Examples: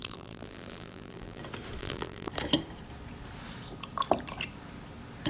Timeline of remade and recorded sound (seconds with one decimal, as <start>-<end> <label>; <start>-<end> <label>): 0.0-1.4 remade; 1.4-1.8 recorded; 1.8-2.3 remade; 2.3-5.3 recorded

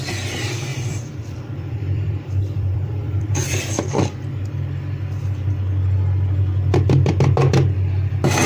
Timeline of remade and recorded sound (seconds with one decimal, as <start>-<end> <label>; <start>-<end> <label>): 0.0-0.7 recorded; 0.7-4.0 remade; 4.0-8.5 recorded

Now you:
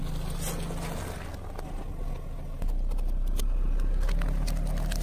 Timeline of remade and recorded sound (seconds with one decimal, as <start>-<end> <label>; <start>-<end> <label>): 0.0-5.0 recorded